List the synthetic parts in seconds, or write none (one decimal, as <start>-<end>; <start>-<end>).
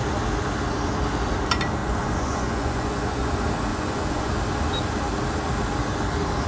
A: 1.8-3.3; 3.7-4.3